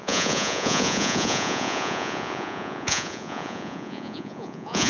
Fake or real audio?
fake